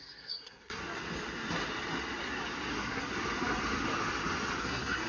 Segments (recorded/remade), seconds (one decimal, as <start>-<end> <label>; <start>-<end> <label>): 0.0-0.8 remade; 0.8-2.7 recorded; 2.7-3.1 remade; 3.1-4.6 recorded; 4.6-5.1 remade